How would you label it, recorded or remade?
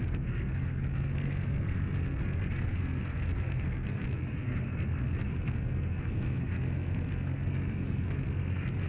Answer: remade